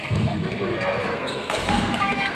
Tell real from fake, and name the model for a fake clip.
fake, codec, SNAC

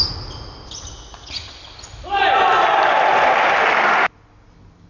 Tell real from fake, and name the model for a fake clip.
real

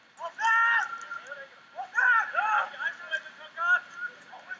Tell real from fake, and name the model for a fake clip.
real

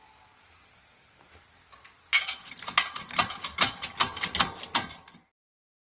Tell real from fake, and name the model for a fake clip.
real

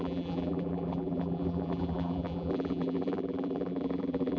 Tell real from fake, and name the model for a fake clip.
fake, vocoder, BigVGAN v2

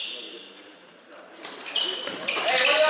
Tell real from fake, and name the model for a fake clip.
fake, vocoder, BigVGAN v2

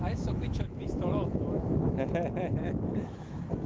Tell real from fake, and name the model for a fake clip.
fake, autoencoder, DAC-VAE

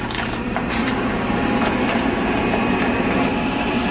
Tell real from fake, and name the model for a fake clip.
fake, vocoder, BigVGAN v2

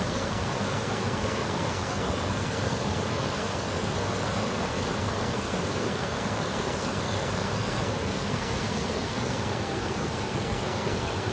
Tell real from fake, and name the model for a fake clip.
fake, codec, SNAC